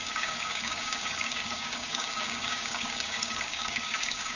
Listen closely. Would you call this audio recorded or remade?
remade